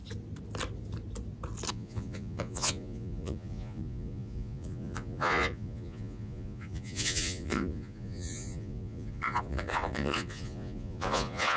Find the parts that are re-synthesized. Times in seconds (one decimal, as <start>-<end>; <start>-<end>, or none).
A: 1.7-11.6